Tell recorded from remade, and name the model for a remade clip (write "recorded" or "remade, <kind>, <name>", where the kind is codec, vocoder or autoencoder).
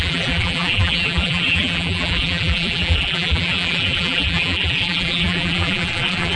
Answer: remade, vocoder, BigVGAN v2